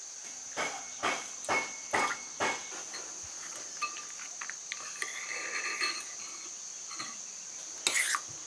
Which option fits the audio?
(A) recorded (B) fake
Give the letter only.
A